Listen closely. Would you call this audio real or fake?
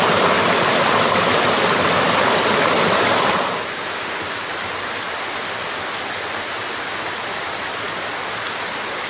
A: real